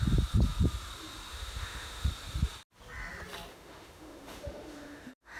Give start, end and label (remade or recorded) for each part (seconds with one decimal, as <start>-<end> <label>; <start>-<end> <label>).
0.0-1.3 recorded; 1.3-2.1 remade; 2.1-3.5 recorded; 3.5-5.4 remade